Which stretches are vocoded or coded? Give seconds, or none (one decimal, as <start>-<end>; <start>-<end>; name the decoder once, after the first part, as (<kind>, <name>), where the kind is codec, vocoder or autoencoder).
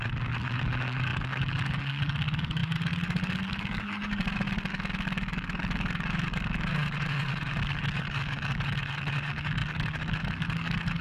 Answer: 0.0-11.0 (codec, DAC)